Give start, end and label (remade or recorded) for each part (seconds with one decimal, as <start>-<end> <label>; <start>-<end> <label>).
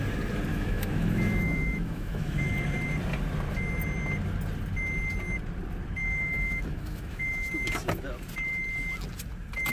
0.0-0.5 recorded; 0.5-2.4 remade; 2.4-6.0 recorded; 6.0-7.5 remade; 7.5-9.7 recorded